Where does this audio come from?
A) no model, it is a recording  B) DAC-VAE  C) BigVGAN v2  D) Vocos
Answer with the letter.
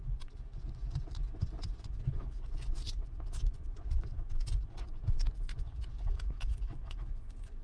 D